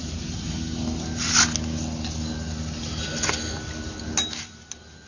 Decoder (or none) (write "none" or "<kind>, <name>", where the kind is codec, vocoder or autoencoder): none